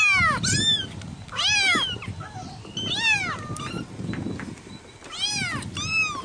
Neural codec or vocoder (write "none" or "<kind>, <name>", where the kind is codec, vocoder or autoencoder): none